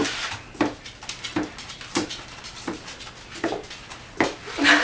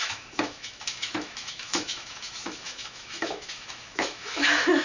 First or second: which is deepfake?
second